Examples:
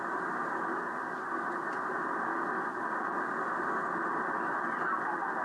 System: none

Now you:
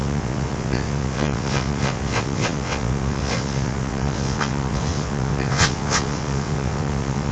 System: vocoder, WaveNeXt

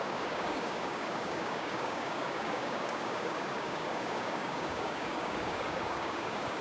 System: codec, DAC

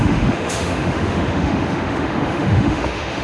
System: autoencoder, DAC-VAE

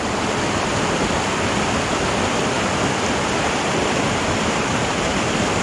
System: none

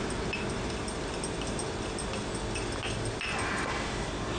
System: none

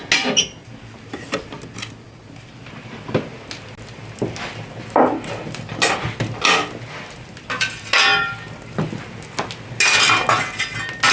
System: none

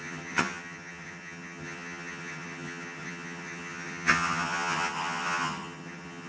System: vocoder, HiFi-GAN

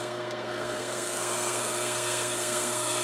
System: codec, SNAC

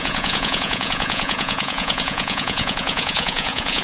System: vocoder, Vocos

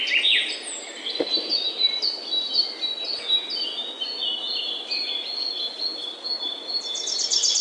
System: none